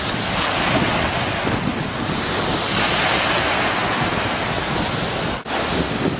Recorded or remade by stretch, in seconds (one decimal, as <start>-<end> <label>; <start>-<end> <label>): 0.0-6.2 recorded